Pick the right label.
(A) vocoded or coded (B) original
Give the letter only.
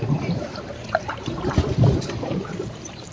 A